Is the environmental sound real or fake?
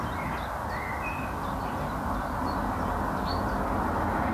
real